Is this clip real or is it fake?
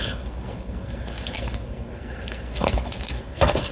fake